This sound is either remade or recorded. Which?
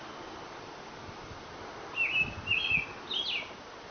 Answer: recorded